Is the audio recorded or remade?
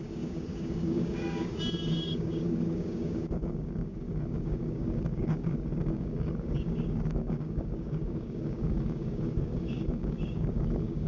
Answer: remade